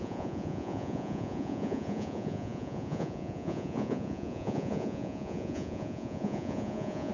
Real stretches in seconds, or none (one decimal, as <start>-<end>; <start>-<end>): none